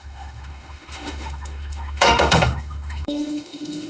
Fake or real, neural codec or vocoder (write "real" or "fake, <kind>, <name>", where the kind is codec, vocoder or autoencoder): fake, autoencoder, DAC-VAE